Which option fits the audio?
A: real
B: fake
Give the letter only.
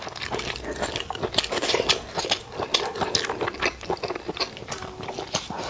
A